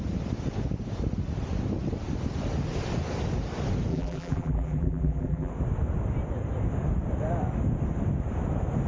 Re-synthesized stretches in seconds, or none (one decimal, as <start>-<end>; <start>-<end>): 3.9-5.5